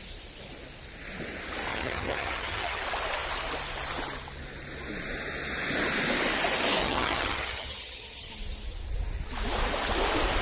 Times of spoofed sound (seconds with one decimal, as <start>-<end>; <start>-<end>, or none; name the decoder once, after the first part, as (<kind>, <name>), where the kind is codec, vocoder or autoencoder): 1.7-2.8 (vocoder, HiFi-GAN); 6.8-8.3